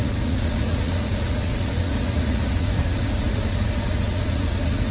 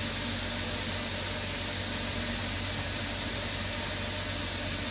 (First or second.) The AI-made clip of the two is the first